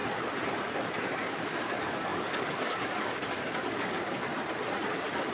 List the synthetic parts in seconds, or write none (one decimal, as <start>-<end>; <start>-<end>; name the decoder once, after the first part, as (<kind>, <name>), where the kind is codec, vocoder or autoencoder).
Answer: 1.0-4.3 (codec, DAC)